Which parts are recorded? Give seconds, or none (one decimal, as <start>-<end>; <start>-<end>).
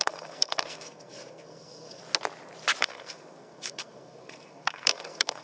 2.0-2.8